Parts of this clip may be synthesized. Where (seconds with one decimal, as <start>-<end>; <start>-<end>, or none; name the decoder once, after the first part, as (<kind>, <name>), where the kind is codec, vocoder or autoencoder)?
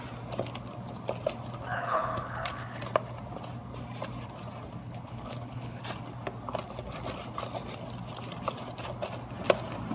1.7-2.8 (codec, HILCodec); 4.8-5.8